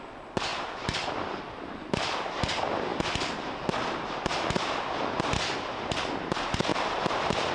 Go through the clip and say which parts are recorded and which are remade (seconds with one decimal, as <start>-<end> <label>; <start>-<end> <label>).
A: 0.0-0.5 recorded; 0.5-1.4 remade; 1.4-7.5 recorded